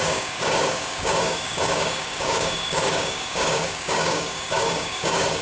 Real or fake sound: fake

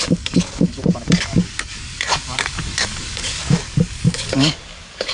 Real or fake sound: fake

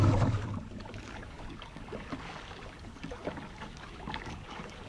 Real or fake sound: fake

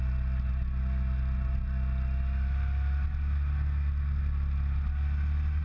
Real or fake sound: real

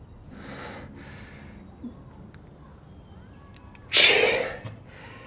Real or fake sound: real